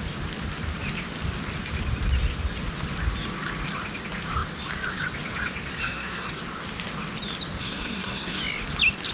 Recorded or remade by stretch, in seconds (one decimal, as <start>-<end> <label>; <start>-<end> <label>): 0.0-5.8 recorded; 5.8-6.3 remade; 6.3-7.6 recorded; 7.6-8.4 remade; 8.4-9.1 recorded